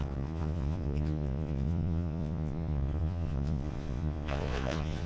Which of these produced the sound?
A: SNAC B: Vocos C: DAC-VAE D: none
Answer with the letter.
B